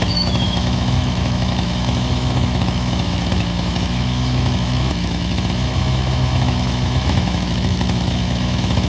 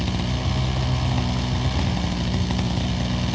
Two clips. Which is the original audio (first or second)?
second